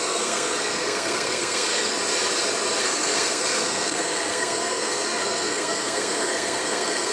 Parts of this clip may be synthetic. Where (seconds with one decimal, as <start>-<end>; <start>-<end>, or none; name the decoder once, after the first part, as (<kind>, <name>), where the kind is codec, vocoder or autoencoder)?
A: 0.0-1.9 (codec, SNAC); 2.8-7.1